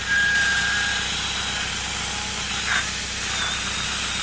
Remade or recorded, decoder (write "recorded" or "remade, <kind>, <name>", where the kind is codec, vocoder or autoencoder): recorded